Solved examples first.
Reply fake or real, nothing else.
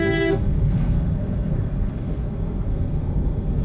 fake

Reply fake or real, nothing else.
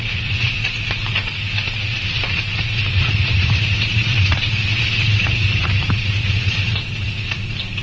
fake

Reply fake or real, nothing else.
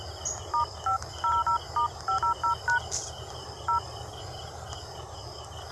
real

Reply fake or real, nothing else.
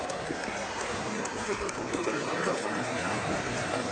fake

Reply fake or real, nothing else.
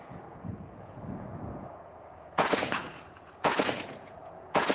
fake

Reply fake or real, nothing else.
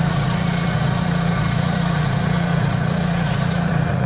fake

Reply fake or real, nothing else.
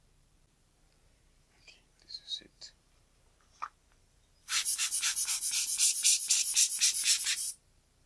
fake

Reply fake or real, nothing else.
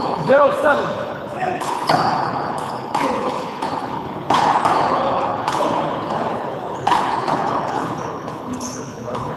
fake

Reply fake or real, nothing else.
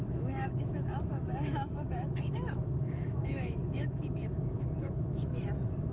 fake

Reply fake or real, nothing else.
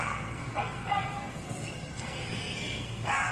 fake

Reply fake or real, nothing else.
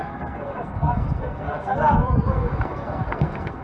fake